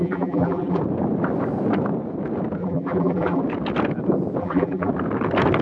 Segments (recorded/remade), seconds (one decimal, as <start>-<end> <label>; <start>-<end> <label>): 0.0-0.8 remade; 0.8-2.6 recorded; 2.6-3.4 remade; 3.4-4.4 recorded; 4.4-4.9 remade; 4.9-5.6 recorded